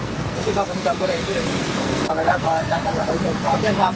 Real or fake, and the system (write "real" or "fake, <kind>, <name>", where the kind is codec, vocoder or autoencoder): fake, codec, SNAC